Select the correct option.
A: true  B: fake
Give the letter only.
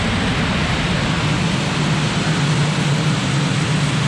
A